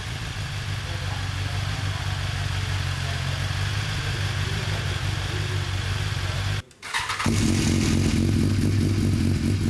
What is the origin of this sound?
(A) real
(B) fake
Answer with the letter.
A